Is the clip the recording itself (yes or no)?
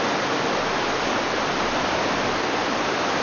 yes